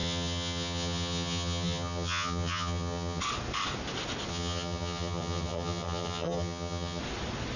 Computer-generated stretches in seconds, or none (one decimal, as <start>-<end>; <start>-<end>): 0.0-3.2; 4.3-7.0